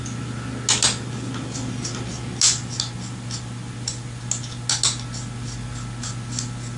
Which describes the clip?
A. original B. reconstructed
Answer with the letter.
A